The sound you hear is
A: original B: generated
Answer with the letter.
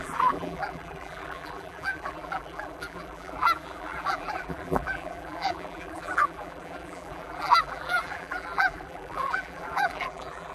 B